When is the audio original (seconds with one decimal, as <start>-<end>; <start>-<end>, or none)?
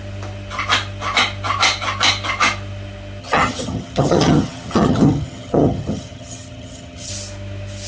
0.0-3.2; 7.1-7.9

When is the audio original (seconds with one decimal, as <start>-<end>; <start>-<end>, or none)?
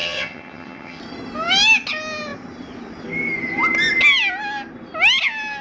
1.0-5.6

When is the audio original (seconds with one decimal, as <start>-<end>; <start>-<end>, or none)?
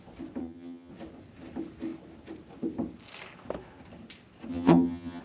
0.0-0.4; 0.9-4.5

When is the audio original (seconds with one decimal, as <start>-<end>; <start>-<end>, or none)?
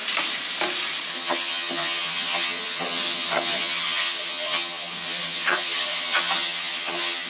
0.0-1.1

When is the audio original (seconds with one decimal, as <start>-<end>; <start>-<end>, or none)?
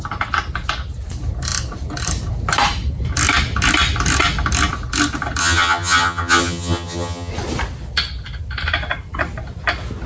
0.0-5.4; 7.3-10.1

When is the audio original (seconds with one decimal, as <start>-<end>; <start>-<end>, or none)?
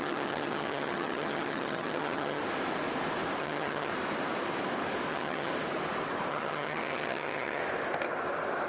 2.4-3.4; 3.9-5.1; 5.5-6.3; 7.6-8.7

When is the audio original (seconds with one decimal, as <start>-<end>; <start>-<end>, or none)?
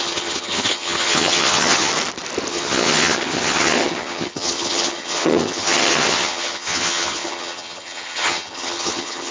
1.9-2.5